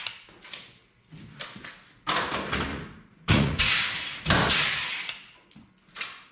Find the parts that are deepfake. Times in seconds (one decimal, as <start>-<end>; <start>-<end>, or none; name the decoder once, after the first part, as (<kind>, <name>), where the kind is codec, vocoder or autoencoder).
2.7-3.9 (vocoder, Vocos)